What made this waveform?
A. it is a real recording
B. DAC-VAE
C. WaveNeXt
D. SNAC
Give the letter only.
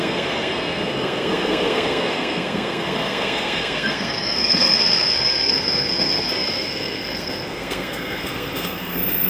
D